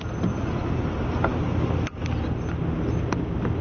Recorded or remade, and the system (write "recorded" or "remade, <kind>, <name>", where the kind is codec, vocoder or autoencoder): recorded